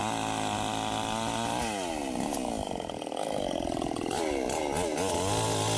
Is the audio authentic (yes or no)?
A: yes